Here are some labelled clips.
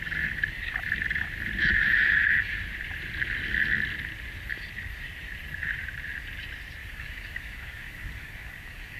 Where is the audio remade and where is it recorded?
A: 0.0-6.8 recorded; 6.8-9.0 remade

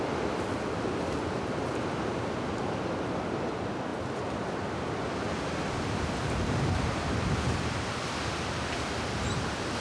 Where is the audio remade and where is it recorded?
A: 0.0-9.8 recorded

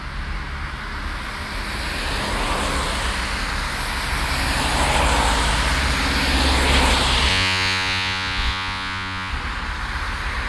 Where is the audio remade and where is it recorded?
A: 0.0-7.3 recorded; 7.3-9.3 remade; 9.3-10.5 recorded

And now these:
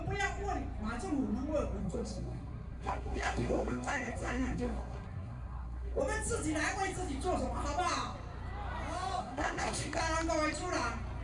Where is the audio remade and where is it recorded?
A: 0.0-1.8 recorded; 1.8-6.0 remade; 6.0-9.2 recorded; 9.2-10.0 remade; 10.0-11.2 recorded

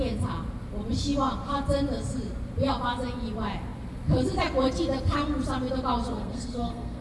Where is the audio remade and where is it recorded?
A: 0.0-6.1 recorded; 6.1-7.0 remade

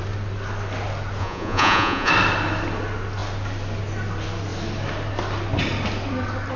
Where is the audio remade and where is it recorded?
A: 0.0-1.2 recorded; 1.2-2.1 remade; 2.1-6.6 recorded